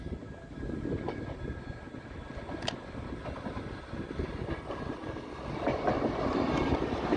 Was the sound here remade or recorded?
recorded